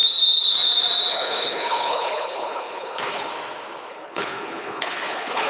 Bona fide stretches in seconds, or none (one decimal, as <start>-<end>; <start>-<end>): 0.0-1.1; 3.3-3.9